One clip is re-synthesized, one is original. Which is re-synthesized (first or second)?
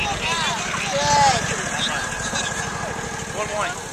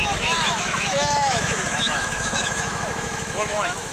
second